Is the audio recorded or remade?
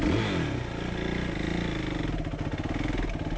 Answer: recorded